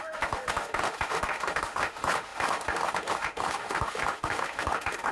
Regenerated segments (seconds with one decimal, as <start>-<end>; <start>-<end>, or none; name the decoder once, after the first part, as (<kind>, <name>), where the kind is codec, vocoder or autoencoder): 0.0-5.1 (autoencoder, DAC-VAE)